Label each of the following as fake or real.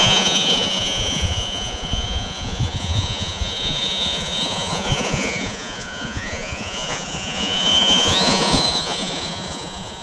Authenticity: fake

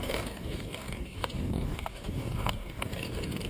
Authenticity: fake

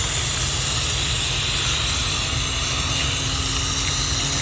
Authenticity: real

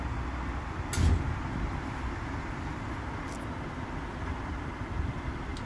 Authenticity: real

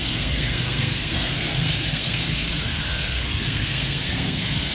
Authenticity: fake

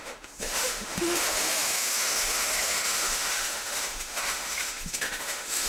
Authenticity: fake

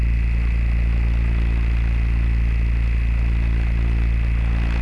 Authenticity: real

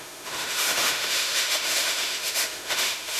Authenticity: fake